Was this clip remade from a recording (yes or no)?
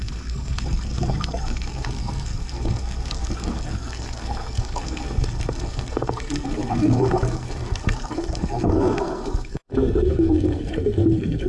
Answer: yes